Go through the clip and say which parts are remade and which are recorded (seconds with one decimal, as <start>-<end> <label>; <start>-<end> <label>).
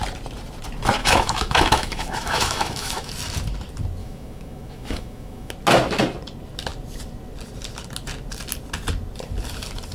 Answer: 0.0-1.0 recorded; 1.0-3.1 remade; 3.1-4.0 recorded; 4.0-5.5 remade; 5.5-9.9 recorded